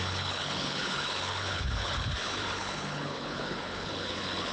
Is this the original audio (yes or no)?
no